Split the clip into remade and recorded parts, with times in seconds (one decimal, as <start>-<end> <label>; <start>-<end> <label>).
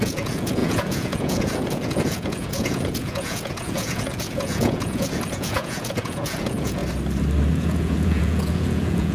0.0-6.8 remade; 6.8-7.5 recorded; 7.5-9.1 remade